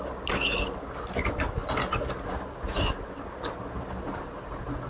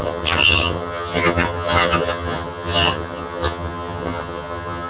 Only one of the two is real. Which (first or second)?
first